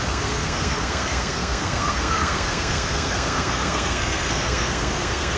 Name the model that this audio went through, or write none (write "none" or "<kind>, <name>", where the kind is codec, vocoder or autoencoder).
codec, SNAC